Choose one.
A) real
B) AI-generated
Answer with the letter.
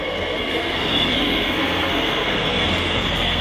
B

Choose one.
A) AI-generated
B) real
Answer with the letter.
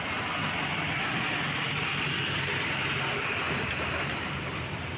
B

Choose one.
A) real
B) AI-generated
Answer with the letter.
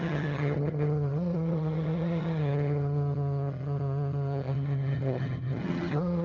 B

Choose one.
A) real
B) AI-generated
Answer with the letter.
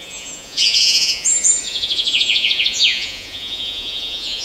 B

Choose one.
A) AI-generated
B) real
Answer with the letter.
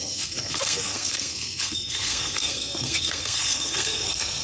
A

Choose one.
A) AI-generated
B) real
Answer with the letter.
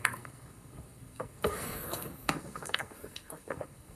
A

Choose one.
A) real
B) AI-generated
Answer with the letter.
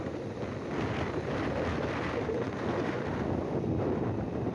A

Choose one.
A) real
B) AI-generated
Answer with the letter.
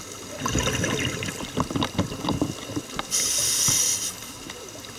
A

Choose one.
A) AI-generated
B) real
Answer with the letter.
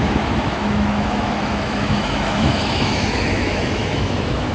A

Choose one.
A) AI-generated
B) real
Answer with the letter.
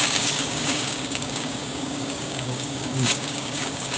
A